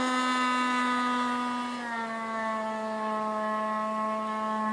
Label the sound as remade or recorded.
recorded